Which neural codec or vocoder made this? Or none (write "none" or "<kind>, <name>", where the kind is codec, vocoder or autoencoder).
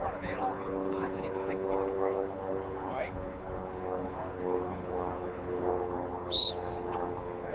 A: codec, HILCodec